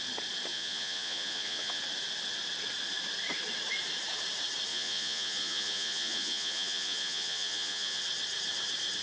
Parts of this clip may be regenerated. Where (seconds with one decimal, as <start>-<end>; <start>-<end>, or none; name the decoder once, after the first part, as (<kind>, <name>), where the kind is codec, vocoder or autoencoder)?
0.5-1.8 (vocoder, Vocos); 4.7-8.0